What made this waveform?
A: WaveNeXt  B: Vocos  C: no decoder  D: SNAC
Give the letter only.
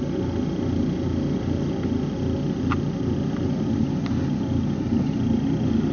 C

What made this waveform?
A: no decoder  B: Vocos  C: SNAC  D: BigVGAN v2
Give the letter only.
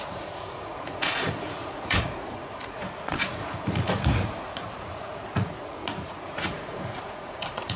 B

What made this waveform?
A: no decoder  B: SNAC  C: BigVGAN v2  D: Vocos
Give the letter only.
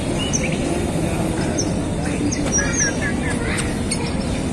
A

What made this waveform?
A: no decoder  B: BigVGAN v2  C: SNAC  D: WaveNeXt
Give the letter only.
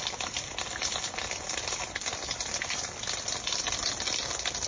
A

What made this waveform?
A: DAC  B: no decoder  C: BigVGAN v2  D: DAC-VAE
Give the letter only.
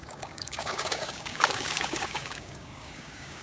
A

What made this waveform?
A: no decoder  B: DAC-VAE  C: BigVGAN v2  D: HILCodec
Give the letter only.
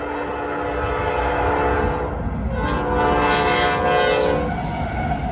A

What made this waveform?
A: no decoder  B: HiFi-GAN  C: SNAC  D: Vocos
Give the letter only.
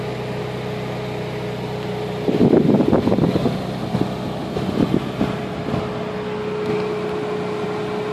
A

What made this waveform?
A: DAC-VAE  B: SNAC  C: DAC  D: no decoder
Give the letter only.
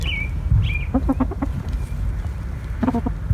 D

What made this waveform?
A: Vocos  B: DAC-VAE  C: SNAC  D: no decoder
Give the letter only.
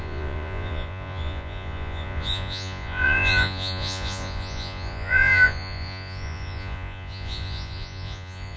A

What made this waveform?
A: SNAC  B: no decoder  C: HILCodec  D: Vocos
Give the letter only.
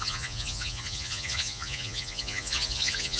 D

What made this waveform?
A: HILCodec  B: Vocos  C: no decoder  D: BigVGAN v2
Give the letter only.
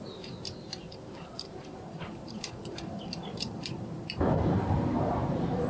D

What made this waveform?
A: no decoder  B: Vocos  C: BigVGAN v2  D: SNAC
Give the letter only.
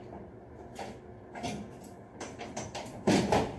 C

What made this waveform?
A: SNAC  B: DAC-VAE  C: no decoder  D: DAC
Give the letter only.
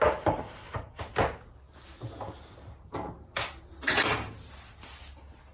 C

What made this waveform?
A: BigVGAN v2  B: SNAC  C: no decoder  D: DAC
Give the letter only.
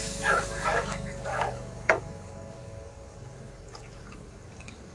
D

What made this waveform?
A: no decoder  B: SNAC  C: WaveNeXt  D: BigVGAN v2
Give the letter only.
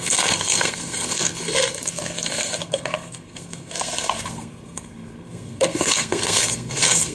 B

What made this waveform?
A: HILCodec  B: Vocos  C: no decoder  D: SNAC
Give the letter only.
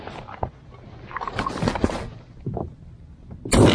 C